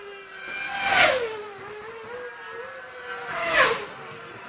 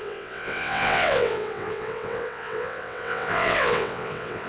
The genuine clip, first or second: first